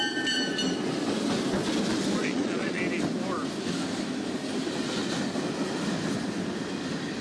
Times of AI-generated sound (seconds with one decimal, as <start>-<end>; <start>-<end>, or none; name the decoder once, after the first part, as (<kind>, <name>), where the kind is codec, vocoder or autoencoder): 2.2-2.8 (vocoder, Vocos)